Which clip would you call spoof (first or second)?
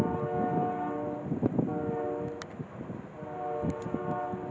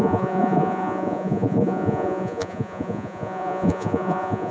second